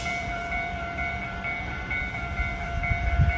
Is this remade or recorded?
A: remade